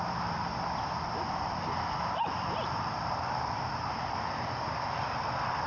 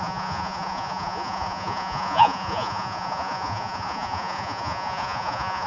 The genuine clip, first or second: first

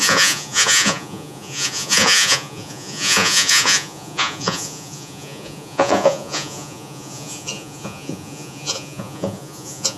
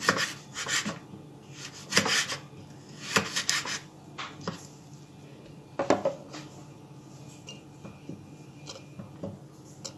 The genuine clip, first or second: second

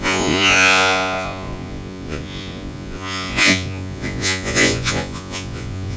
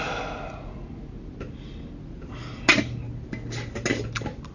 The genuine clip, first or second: second